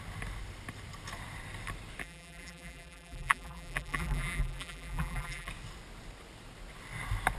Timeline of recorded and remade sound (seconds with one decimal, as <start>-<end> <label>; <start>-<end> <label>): 0.0-2.0 recorded; 2.0-5.5 remade; 5.5-7.4 recorded